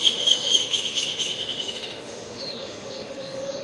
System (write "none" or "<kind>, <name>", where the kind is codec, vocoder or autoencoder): autoencoder, DAC-VAE